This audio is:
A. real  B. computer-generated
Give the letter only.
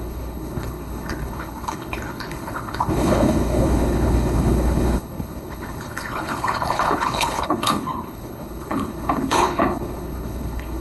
B